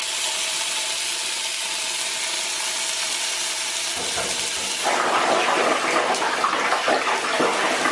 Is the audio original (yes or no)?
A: yes